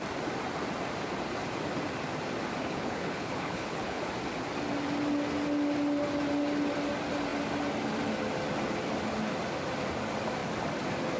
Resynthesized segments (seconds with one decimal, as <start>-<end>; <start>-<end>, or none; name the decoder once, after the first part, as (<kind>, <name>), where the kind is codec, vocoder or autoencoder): 2.6-4.0 (codec, HILCodec)